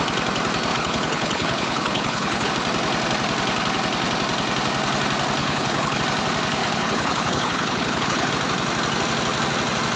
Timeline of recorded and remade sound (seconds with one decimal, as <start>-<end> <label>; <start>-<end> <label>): 0.0-0.7 recorded; 0.7-2.5 remade; 2.5-5.4 recorded; 5.4-6.0 remade; 6.0-6.6 recorded; 6.6-8.3 remade; 8.3-10.0 recorded